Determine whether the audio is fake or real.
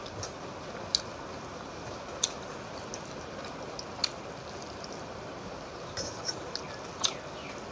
real